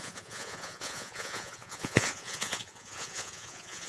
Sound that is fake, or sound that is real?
fake